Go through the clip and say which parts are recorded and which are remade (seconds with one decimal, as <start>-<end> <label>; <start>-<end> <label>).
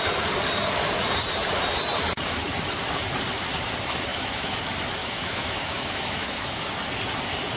0.0-4.1 recorded; 4.1-4.6 remade; 4.6-5.0 recorded; 5.0-6.7 remade; 6.7-7.6 recorded